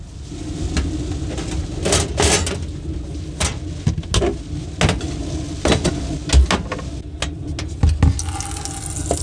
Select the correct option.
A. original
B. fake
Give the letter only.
A